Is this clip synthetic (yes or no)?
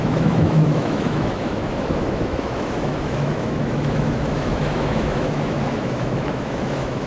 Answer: yes